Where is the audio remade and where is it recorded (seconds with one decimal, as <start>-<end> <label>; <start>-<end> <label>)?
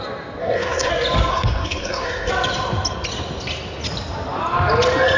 0.0-0.4 recorded; 0.4-0.9 remade; 0.9-1.3 recorded; 1.3-2.3 remade; 2.3-5.2 recorded